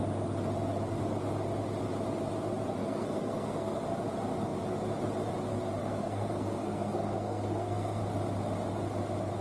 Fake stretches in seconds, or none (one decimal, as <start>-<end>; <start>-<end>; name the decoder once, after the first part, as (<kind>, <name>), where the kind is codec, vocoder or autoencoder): 2.8-3.8 (codec, SNAC); 5.8-8.0

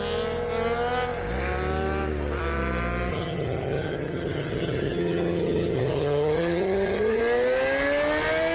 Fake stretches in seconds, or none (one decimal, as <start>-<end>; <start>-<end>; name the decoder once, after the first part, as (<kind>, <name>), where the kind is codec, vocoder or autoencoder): 3.1-7.2 (vocoder, HiFi-GAN)

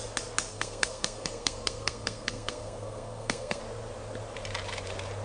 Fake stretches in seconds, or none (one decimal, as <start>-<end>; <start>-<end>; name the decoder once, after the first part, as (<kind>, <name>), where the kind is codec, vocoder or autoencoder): 0.5-3.6 (codec, SNAC)

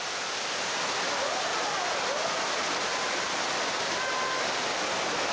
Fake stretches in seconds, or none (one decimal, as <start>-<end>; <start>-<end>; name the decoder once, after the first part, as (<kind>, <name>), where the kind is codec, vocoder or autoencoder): none